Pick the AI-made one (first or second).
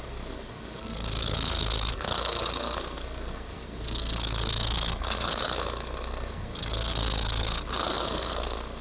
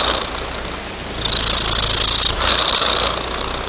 first